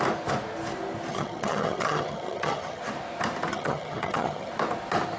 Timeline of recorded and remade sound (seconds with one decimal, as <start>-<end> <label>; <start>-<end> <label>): 0.0-1.1 recorded; 1.1-2.8 remade; 2.8-3.5 recorded; 3.5-4.5 remade; 4.5-5.2 recorded